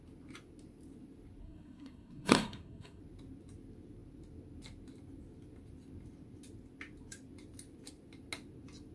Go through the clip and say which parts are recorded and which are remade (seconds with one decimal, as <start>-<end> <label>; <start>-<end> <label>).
0.0-1.4 recorded; 1.4-3.0 remade; 3.0-8.9 recorded